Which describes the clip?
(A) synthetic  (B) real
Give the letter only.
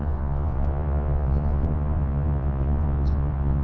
A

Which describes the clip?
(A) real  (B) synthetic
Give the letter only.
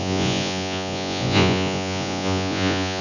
B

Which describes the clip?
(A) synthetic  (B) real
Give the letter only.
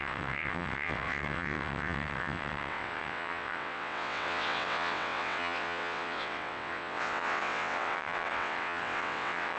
A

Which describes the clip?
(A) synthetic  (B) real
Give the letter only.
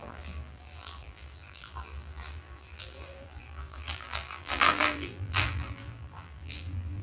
A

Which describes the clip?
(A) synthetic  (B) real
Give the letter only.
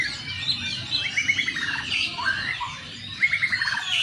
A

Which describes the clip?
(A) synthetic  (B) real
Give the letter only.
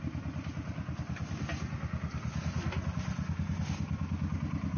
B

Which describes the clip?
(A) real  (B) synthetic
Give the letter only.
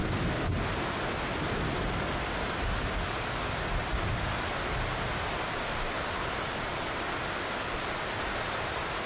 A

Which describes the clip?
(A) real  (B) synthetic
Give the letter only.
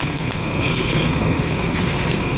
B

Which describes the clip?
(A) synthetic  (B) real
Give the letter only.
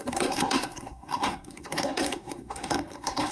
A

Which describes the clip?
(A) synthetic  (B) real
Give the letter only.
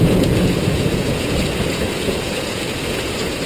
A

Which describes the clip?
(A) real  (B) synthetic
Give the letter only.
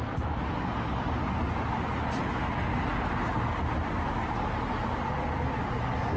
A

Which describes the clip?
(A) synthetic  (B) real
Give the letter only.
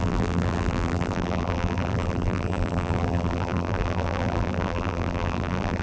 A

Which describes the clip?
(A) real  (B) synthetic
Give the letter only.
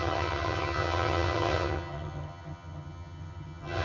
B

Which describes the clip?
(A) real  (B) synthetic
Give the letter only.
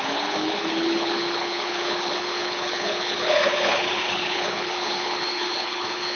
B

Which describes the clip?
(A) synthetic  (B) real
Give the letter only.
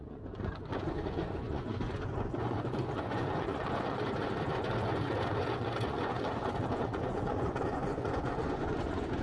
A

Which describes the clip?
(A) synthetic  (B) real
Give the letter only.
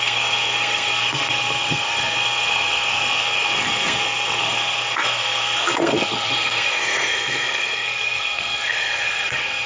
A